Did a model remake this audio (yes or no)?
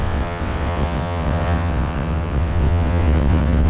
yes